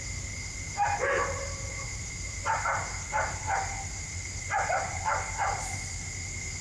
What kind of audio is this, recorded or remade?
recorded